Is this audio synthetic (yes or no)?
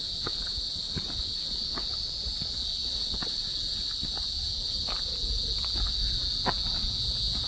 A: no